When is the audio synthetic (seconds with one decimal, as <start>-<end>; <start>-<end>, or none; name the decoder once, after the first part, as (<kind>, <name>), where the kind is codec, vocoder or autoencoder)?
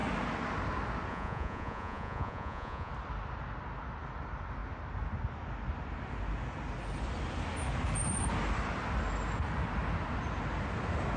1.1-2.9 (vocoder, Vocos)